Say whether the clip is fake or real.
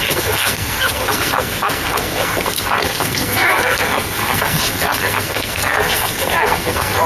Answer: fake